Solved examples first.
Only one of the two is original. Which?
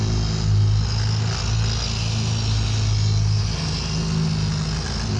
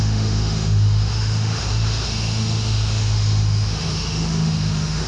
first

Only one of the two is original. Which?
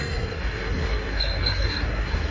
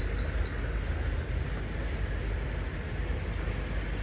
second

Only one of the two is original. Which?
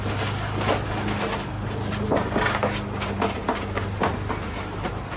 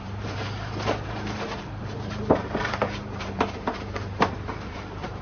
first